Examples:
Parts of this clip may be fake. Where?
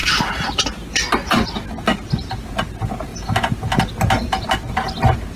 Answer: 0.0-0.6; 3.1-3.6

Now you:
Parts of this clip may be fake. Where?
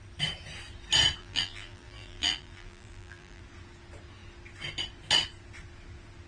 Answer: 1.2-3.4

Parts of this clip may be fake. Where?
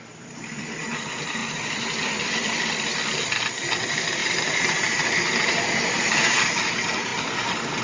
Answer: 0.0-2.9; 3.8-7.1